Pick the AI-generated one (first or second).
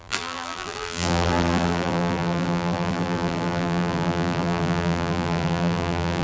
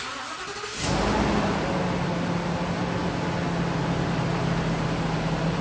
first